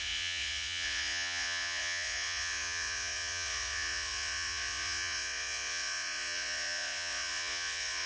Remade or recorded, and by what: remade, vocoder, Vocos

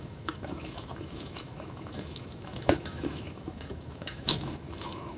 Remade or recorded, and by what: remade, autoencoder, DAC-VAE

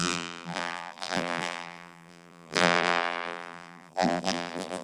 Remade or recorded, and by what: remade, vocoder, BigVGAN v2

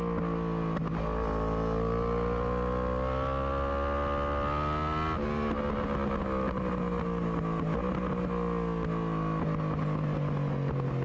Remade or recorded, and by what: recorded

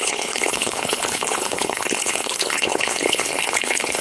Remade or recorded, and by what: remade, codec, HILCodec